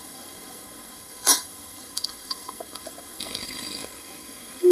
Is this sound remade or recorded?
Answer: remade